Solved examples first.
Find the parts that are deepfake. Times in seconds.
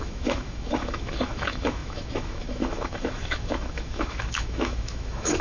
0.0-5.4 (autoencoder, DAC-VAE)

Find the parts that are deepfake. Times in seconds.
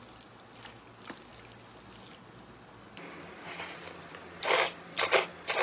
none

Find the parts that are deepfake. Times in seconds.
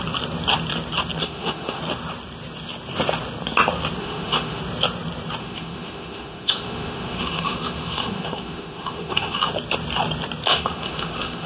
1.2-1.8 (autoencoder, DAC-VAE); 4.0-4.6; 5.4-9.5; 10.5-11.5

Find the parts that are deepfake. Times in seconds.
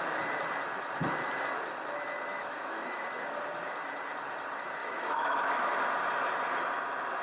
2.3-3.0 (autoencoder, DAC-VAE); 4.8-5.9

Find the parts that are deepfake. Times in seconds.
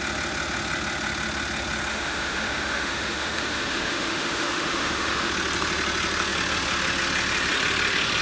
1.9-5.3 (autoencoder, DAC-VAE)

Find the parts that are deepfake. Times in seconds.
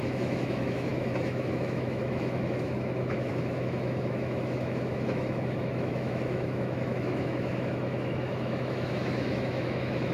0.0-10.1 (autoencoder, DAC-VAE)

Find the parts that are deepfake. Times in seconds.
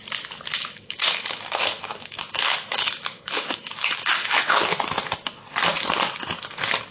0.5-4.6 (autoencoder, DAC-VAE)